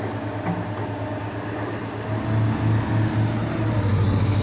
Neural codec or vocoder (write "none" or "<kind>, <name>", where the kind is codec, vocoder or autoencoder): none